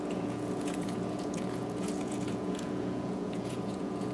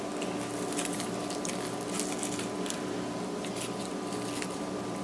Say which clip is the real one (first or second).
second